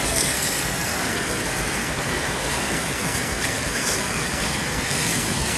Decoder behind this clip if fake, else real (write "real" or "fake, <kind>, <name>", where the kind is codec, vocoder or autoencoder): fake, codec, SNAC